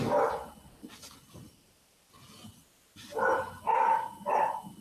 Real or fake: real